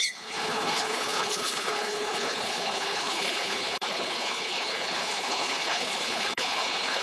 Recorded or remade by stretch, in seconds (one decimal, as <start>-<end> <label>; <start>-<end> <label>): 0.0-7.0 remade